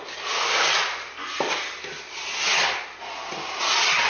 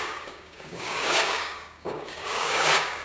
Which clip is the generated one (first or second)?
second